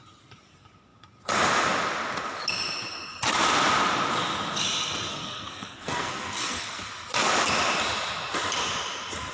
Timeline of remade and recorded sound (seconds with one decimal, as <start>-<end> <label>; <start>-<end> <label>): 0.0-5.1 recorded; 5.1-6.8 remade; 6.8-9.3 recorded